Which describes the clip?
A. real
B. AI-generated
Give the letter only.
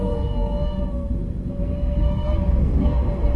B